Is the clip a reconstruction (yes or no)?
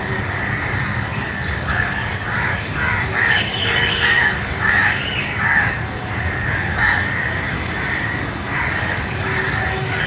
yes